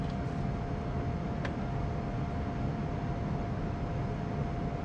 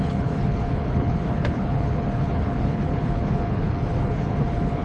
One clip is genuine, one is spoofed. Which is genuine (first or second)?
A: first